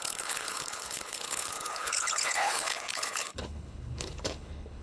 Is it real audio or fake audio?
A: fake